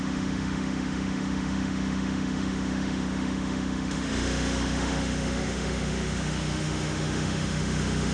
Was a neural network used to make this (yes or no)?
yes